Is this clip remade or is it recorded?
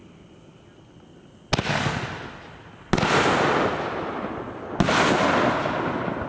recorded